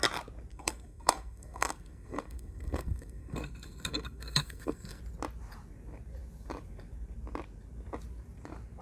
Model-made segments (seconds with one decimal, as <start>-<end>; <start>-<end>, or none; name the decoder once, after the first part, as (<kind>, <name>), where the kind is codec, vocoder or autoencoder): 0.5-5.0 (codec, SNAC)